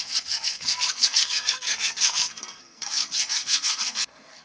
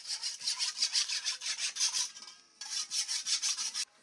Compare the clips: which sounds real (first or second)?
second